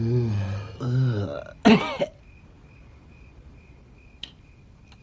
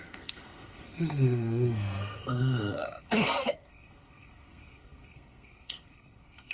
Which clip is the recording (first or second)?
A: first